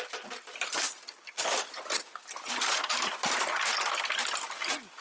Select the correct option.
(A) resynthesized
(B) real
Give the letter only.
B